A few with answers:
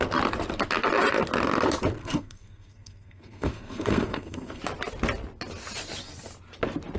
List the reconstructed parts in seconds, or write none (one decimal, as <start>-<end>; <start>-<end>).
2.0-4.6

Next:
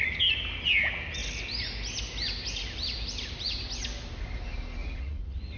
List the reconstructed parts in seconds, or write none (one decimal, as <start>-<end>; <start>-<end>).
4.8-5.6

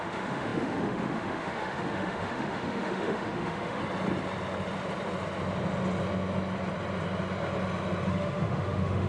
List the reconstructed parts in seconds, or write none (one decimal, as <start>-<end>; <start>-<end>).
0.0-3.8; 8.1-9.1

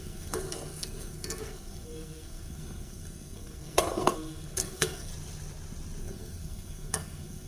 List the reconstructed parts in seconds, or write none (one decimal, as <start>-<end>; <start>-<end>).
0.0-5.1; 6.0-7.5

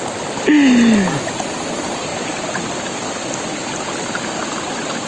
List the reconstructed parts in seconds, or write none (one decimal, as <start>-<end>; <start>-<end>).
none

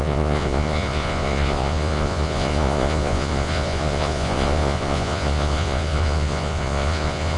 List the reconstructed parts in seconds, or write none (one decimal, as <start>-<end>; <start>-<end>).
0.0-7.4